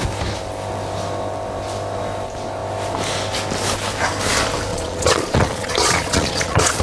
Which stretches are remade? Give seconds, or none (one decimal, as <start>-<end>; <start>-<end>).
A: 4.7-6.8

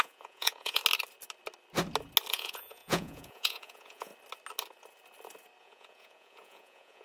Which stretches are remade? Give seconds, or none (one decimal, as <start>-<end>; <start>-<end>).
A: 0.0-0.8; 2.3-4.1; 5.6-7.0

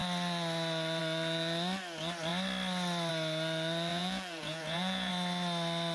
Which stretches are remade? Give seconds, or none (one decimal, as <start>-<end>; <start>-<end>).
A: 3.9-5.1

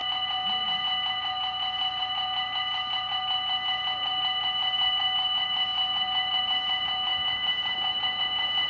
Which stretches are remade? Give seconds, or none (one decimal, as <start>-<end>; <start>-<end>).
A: 0.0-8.7

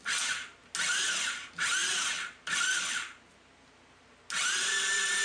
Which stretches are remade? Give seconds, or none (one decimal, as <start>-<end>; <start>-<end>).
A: none

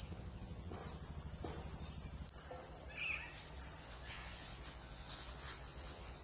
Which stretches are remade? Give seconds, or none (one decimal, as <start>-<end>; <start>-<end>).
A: 0.0-0.8; 3.8-6.2

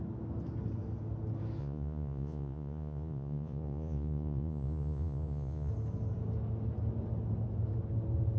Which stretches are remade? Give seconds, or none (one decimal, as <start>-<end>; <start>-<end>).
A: 1.6-5.7

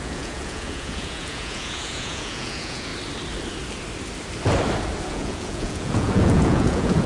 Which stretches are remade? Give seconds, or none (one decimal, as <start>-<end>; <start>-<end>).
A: 0.0-2.9; 5.1-7.1